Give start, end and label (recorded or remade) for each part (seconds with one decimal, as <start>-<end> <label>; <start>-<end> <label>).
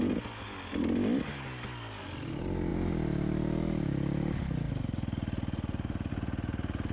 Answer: 0.0-6.9 recorded